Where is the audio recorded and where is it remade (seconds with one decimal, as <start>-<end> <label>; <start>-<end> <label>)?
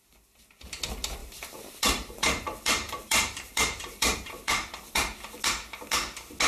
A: 0.0-1.2 recorded; 1.2-4.9 remade; 4.9-6.5 recorded